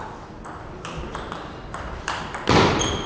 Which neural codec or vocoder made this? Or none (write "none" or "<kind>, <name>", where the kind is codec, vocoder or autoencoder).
vocoder, BigVGAN v2